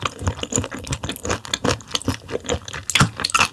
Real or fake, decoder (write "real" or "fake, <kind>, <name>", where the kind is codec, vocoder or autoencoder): real